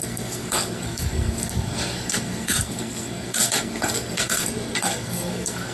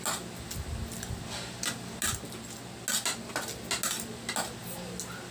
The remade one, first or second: first